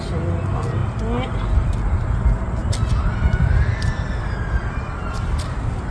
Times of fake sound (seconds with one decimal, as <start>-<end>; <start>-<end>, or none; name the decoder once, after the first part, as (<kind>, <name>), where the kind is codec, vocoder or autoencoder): none